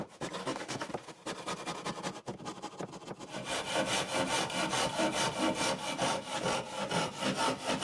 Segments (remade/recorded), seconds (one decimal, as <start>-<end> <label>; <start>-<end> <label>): 0.0-0.4 recorded; 0.4-0.9 remade; 0.9-7.8 recorded